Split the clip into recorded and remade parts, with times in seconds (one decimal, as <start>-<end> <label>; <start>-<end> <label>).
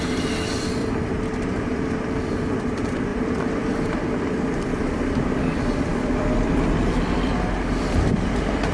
0.0-0.8 recorded; 0.8-2.2 remade; 2.2-3.1 recorded; 3.1-3.6 remade; 3.6-5.9 recorded; 5.9-7.4 remade; 7.4-8.7 recorded